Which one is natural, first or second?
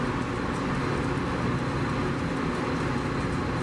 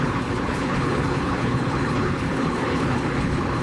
first